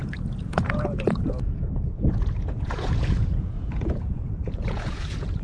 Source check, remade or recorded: remade